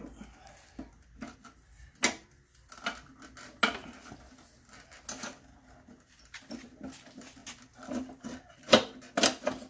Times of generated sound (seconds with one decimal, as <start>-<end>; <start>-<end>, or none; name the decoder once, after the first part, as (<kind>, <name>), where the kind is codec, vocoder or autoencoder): none

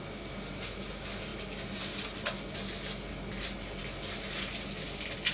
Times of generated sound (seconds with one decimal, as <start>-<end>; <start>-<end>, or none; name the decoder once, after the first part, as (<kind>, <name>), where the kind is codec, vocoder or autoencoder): none